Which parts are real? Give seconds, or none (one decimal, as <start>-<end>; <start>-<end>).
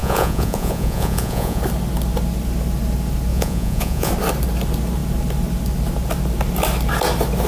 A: 1.6-3.3; 4.1-7.5